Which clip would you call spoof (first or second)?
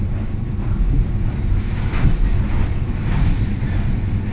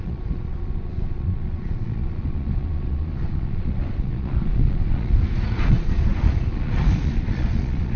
second